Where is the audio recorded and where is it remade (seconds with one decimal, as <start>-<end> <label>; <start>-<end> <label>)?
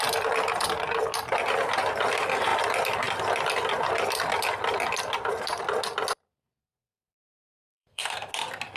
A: 0.0-6.6 recorded; 6.6-8.3 remade; 8.3-8.8 recorded